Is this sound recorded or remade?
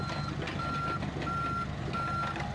recorded